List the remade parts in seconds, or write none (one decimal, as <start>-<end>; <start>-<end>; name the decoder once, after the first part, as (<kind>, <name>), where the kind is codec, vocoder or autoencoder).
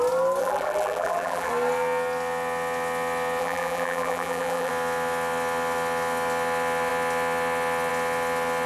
0.4-1.5 (vocoder, BigVGAN v2); 3.4-4.7